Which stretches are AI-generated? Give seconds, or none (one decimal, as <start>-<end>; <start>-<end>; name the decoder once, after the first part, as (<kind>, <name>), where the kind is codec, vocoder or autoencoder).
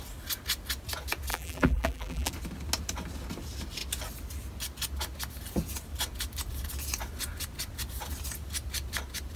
1.3-2.3 (vocoder, BigVGAN v2)